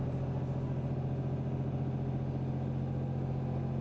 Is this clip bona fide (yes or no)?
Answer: yes